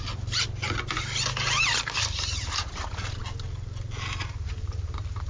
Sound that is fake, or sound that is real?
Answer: real